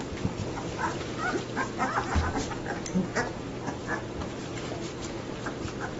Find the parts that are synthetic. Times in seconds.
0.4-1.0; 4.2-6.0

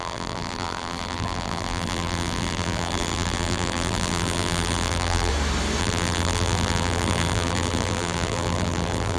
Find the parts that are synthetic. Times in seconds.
0.0-5.3; 5.8-9.2